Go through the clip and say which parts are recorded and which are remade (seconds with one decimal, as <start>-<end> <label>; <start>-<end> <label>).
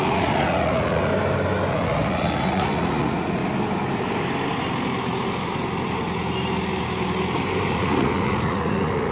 0.0-1.1 remade; 1.1-1.7 recorded; 1.7-3.4 remade; 3.4-7.7 recorded; 7.7-9.1 remade